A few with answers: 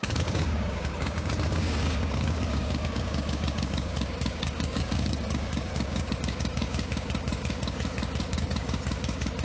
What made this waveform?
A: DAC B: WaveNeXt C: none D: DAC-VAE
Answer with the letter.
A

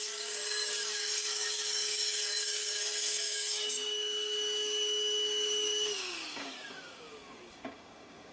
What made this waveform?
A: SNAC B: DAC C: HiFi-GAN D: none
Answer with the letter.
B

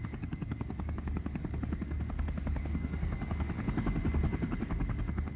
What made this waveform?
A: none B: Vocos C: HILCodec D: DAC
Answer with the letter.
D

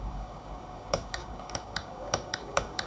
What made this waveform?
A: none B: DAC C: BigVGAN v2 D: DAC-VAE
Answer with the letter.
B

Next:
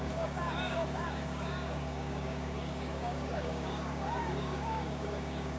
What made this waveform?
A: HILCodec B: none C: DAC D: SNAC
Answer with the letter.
C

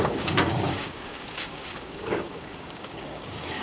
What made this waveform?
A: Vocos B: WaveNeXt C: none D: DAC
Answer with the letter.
D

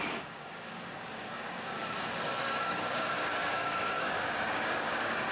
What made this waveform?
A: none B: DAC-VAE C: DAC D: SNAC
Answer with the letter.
C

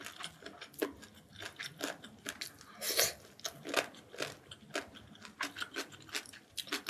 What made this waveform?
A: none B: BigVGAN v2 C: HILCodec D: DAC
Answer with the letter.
A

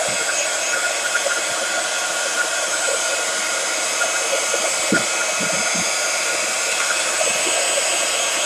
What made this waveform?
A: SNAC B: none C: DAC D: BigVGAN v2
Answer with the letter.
B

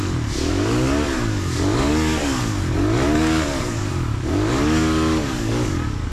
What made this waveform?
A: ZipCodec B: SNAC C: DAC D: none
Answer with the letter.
C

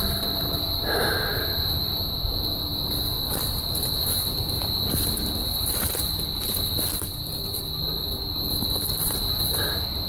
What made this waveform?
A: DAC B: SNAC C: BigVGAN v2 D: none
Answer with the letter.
D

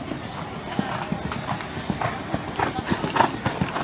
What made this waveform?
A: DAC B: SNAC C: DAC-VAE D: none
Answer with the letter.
D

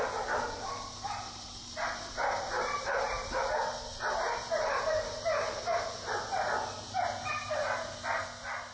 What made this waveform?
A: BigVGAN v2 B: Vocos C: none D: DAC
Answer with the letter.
C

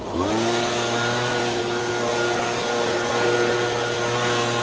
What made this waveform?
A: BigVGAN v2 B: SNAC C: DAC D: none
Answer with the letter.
D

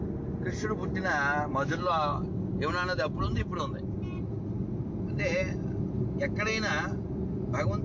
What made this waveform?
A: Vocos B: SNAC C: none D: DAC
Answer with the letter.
C